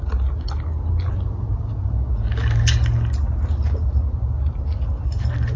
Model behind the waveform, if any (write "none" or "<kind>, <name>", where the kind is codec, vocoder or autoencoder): none